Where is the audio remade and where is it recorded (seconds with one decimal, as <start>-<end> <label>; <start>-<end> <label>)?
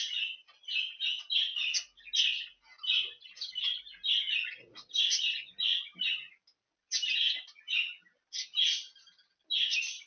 0.0-10.1 recorded